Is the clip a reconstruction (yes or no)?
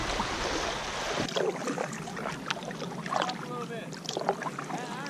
no